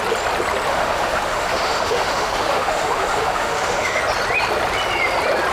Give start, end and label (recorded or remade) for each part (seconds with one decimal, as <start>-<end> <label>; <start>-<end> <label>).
0.0-0.7 recorded; 0.7-4.0 remade; 4.0-5.5 recorded